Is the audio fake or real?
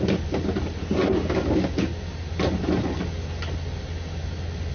real